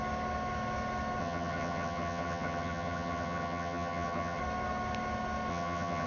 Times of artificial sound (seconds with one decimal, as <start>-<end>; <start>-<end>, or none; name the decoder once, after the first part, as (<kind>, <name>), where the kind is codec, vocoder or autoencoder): 1.2-4.4 (vocoder, HiFi-GAN); 5.5-6.1